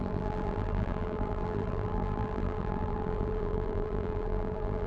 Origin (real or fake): fake